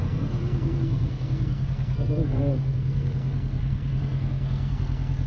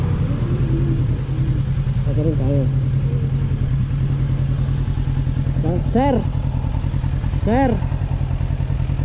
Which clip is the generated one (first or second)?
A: first